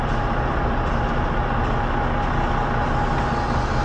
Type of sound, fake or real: real